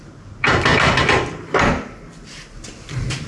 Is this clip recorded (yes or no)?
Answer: yes